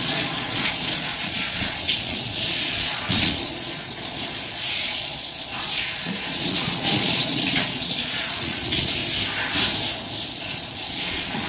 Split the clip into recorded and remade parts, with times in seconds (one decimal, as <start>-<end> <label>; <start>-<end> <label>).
0.0-9.0 remade; 9.0-10.3 recorded; 10.3-11.5 remade